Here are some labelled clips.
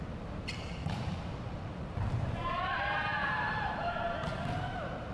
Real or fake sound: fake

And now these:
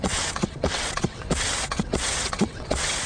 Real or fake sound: fake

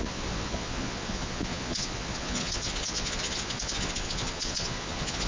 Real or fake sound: fake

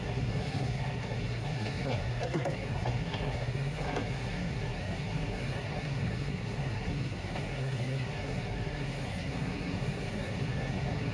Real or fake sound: fake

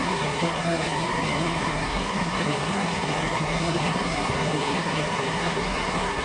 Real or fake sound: fake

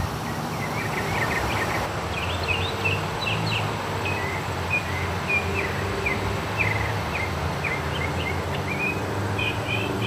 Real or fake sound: real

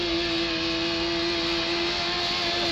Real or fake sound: real